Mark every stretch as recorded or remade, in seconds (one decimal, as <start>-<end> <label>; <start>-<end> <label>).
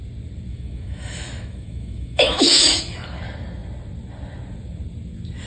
0.0-0.5 recorded; 0.5-2.8 remade; 2.8-5.5 recorded